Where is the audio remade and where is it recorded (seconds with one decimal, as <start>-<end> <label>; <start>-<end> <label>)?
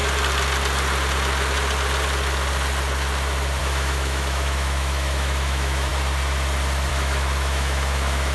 0.0-3.6 recorded; 3.6-5.9 remade; 5.9-6.9 recorded; 6.9-8.3 remade